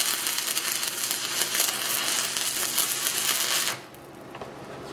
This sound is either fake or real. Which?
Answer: real